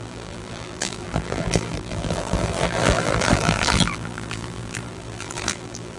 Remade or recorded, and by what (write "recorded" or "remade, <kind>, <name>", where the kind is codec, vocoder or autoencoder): remade, vocoder, BigVGAN v2